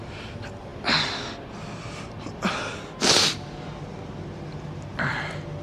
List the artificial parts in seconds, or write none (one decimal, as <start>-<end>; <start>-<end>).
none